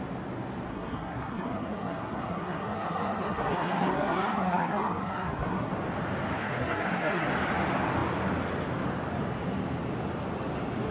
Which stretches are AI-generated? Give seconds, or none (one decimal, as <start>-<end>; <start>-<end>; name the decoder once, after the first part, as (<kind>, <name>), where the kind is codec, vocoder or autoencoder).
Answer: 0.7-5.7 (codec, SNAC); 6.4-7.3